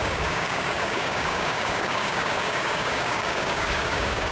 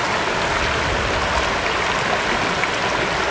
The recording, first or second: second